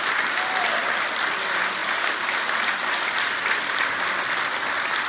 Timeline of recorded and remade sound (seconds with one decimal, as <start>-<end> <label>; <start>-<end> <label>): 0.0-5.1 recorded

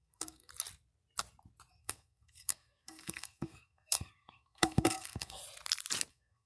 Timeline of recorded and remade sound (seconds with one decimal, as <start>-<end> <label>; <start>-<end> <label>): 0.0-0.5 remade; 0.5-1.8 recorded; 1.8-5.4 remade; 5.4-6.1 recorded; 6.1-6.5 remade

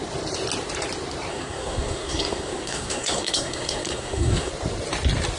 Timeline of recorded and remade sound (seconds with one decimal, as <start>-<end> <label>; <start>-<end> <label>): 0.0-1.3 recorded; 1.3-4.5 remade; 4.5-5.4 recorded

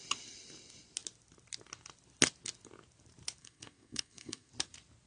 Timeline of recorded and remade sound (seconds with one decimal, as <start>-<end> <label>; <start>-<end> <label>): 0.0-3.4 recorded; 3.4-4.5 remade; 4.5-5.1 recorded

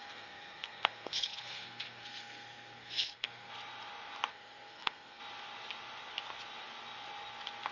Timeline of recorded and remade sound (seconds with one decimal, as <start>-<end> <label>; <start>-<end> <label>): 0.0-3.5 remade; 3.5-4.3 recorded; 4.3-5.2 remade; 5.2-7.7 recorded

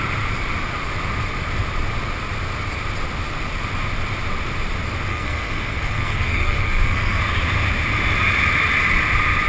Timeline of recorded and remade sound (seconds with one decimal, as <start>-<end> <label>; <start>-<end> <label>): 0.0-5.1 recorded; 5.1-7.2 remade; 7.2-9.5 recorded

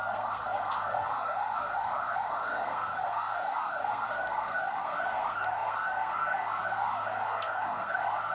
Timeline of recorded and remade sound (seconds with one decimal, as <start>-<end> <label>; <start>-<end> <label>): 0.0-8.3 remade

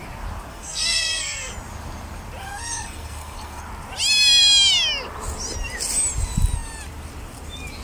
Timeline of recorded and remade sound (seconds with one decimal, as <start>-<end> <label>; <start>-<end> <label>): 0.0-0.5 recorded; 0.5-1.5 remade; 1.5-2.4 recorded; 2.4-3.6 remade; 3.6-7.8 recorded